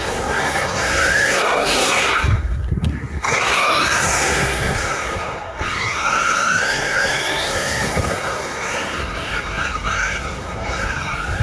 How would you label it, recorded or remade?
remade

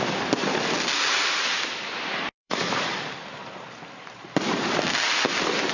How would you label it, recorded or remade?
remade